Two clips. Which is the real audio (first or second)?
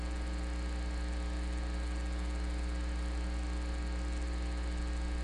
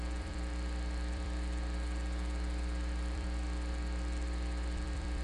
first